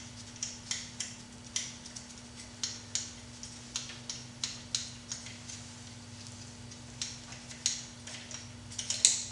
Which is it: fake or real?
real